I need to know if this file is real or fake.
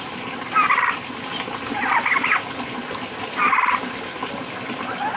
real